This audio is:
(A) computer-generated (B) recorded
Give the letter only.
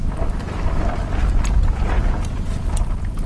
B